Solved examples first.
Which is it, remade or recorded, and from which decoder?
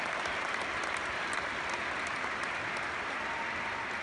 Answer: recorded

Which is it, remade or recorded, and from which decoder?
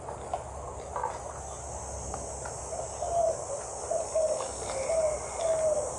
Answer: recorded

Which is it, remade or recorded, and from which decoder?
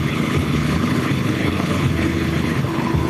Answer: remade, codec, HILCodec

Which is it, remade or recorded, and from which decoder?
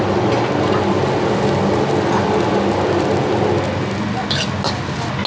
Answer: recorded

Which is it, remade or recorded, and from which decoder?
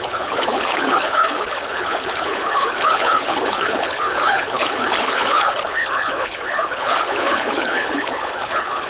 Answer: remade, codec, HILCodec